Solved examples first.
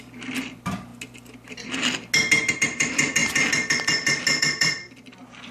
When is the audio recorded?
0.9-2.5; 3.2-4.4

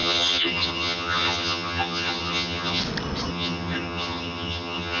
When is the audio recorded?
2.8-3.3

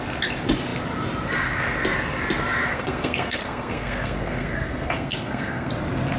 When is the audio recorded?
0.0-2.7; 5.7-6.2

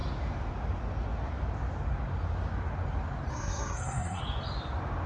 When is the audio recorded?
0.0-3.3; 4.2-5.1